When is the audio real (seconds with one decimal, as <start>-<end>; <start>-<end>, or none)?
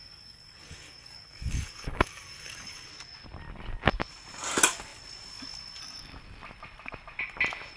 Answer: 2.9-7.8